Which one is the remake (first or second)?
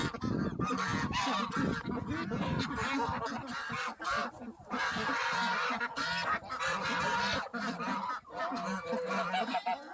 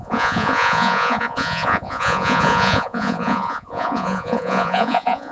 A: second